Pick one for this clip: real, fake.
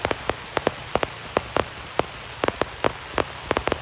real